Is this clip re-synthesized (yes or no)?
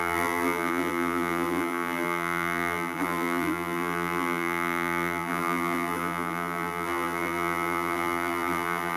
yes